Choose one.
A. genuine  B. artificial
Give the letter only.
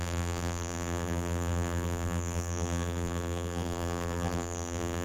B